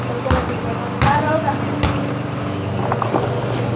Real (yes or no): yes